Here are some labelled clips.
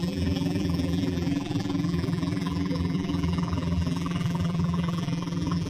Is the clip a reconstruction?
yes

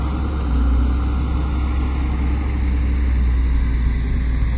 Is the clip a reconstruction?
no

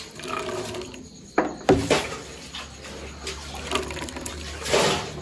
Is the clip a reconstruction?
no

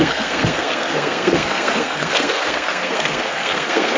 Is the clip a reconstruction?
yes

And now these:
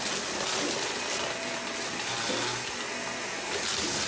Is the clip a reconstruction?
no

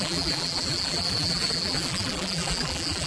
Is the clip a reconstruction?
yes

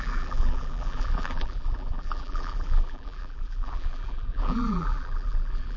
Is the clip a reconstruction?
yes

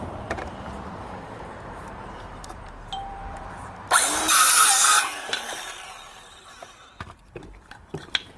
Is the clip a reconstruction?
yes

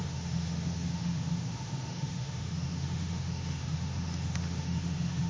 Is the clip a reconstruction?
yes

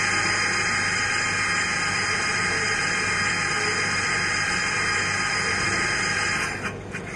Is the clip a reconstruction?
no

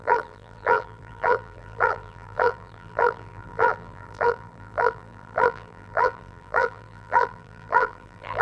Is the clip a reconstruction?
yes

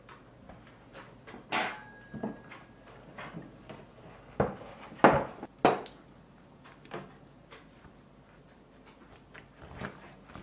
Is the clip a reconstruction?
no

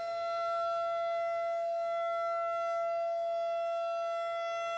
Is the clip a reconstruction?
no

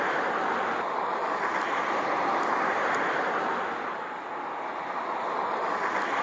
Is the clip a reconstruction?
no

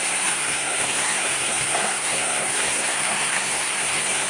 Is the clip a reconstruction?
yes